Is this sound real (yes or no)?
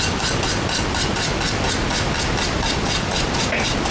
yes